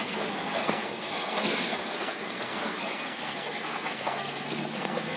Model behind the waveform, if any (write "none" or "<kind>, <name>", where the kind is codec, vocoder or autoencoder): codec, SNAC